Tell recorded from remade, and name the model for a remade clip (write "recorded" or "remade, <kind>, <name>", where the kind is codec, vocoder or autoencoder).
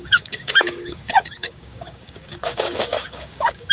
remade, codec, DAC